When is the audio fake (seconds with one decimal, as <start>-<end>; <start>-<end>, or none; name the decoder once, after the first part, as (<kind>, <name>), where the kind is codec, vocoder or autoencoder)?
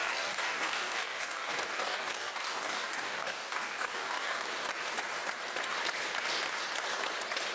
0.0-4.5 (codec, DAC)